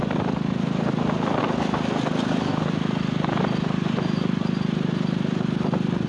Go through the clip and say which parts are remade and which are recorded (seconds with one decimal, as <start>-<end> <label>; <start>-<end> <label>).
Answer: 0.0-6.1 recorded